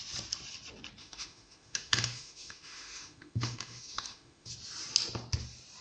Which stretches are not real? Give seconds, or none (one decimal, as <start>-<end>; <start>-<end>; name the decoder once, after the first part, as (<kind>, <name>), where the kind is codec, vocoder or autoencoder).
1.0-4.5 (autoencoder, DAC-VAE)